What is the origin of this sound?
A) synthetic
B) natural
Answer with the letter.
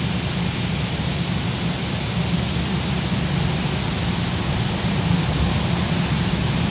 B